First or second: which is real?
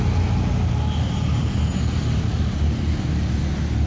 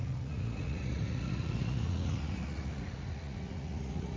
first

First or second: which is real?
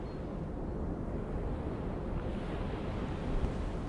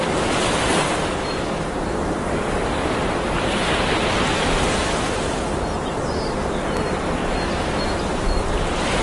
first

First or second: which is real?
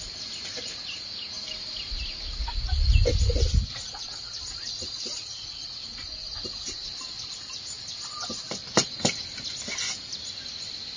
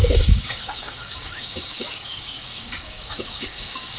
first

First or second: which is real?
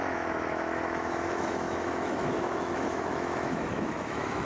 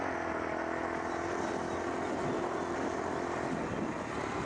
second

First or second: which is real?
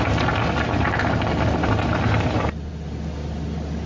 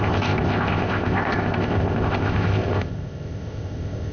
first